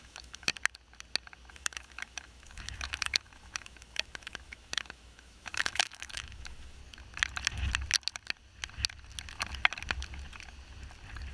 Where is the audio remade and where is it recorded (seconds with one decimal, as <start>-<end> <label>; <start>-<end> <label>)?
0.0-0.5 remade; 0.5-1.5 recorded; 1.5-6.8 remade; 6.8-11.3 recorded